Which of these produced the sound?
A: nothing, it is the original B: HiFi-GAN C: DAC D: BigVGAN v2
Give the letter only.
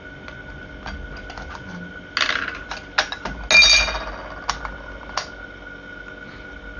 A